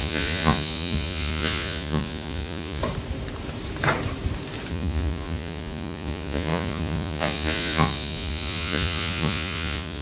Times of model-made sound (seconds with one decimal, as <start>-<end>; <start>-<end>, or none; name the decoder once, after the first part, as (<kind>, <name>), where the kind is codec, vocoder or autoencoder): 0.0-2.8 (vocoder, Vocos); 4.7-10.0